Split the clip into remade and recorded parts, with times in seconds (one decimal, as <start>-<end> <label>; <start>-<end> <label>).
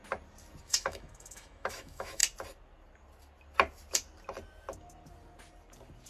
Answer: 0.0-0.6 recorded; 0.6-2.2 remade; 2.2-6.1 recorded